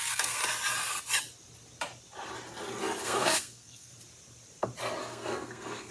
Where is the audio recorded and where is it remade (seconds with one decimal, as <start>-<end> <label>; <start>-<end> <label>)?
0.0-0.4 remade; 0.4-3.0 recorded; 3.0-3.9 remade; 3.9-5.0 recorded; 5.0-5.9 remade